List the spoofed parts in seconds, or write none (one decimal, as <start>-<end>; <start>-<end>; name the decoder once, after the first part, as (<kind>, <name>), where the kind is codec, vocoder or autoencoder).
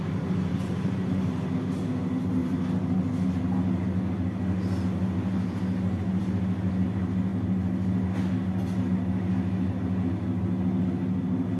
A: 0.5-1.2 (vocoder, Vocos)